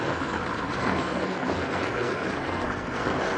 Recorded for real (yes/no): no